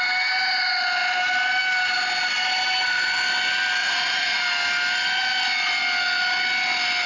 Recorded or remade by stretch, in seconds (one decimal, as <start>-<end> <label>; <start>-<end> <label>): 0.0-3.8 recorded; 3.8-4.4 remade; 4.4-7.1 recorded